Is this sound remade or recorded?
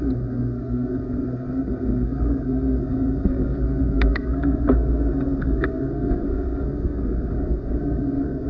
remade